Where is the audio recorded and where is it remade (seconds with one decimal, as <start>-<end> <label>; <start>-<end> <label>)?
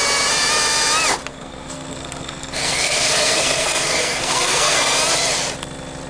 0.0-1.3 recorded; 1.3-5.0 remade; 5.0-6.1 recorded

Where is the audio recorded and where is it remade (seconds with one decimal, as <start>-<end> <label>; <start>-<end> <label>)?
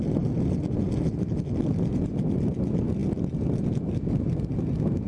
0.0-1.9 recorded; 1.9-2.5 remade; 2.5-5.1 recorded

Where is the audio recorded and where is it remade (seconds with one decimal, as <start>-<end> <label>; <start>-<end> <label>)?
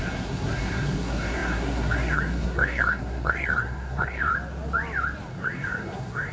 0.0-4.3 remade; 4.3-5.3 recorded; 5.3-6.3 remade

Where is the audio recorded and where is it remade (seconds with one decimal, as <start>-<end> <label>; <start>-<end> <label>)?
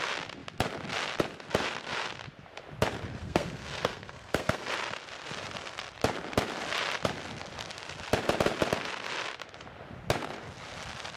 0.0-3.2 recorded; 3.2-4.7 remade; 4.7-11.2 recorded